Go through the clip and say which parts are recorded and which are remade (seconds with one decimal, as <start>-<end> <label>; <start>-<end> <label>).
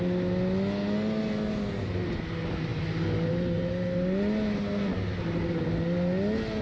0.0-6.6 recorded